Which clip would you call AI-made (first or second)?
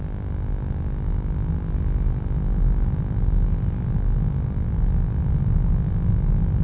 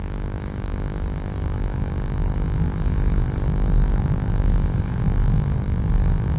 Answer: second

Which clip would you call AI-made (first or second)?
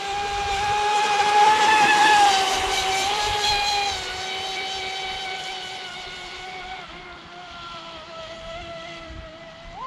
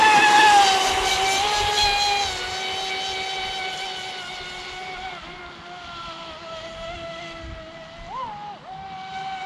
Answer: first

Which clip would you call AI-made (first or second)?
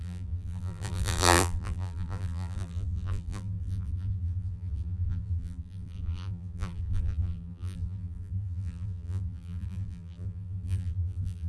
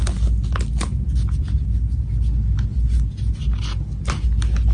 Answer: first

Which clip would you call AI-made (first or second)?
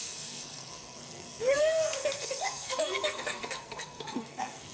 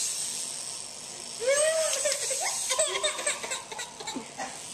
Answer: first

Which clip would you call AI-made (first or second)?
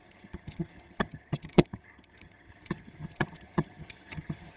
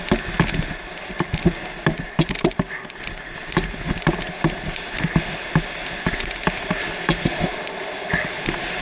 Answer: first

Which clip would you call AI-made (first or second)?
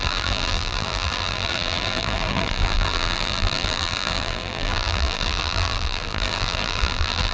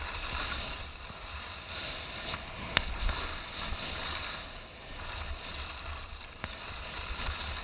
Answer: first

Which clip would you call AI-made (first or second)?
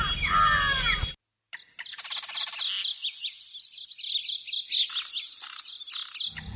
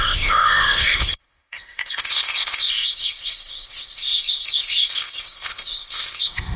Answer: second